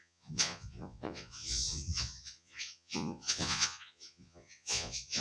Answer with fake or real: fake